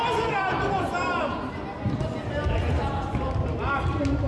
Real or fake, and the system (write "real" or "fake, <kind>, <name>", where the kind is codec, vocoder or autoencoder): real